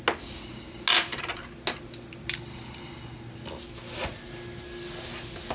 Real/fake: real